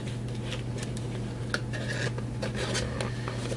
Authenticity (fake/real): real